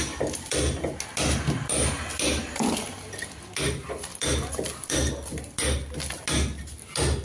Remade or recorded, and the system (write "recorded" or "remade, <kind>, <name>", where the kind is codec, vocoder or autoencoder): recorded